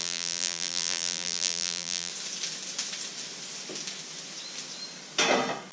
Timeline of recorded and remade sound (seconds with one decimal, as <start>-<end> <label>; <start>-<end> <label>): 0.0-2.1 remade; 2.1-5.7 recorded